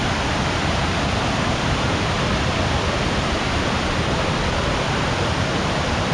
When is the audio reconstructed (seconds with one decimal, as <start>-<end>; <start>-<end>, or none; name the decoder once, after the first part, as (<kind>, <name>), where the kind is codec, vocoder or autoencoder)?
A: 0.0-6.1 (vocoder, BigVGAN v2)